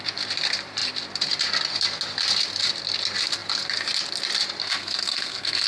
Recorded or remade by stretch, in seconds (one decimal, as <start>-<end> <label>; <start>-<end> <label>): 0.0-4.6 recorded; 4.6-5.7 remade